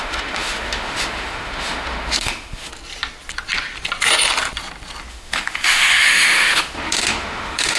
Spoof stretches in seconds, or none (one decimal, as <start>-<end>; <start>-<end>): 0.0-2.7; 5.1-7.8